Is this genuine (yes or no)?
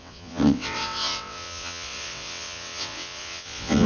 no